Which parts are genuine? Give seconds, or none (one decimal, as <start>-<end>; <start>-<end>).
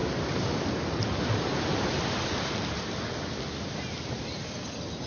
0.0-5.1